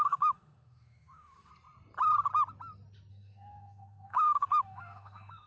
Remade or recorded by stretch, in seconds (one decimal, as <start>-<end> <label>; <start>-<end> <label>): 0.0-1.5 remade; 1.5-3.1 recorded; 3.1-5.5 remade